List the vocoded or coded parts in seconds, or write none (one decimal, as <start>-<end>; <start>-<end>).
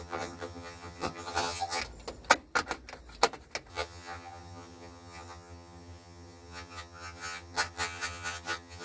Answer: 0.0-1.8; 3.7-8.8